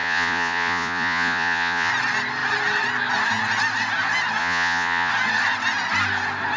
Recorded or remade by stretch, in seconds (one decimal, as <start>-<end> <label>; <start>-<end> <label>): 0.0-1.9 remade; 1.9-4.4 recorded; 4.4-5.1 remade; 5.1-6.6 recorded